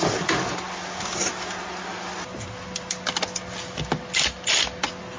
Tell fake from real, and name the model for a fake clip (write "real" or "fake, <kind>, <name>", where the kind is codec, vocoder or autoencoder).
real